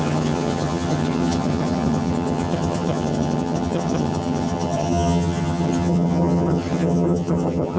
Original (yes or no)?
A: no